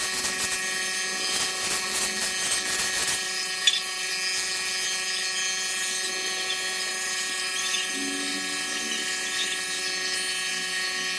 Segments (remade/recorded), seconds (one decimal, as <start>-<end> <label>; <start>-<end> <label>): 0.0-3.0 recorded; 3.0-4.1 remade; 4.1-6.9 recorded; 6.9-7.9 remade; 7.9-11.2 recorded